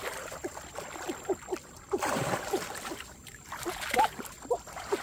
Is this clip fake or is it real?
fake